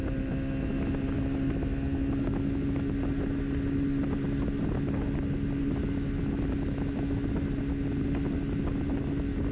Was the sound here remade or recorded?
recorded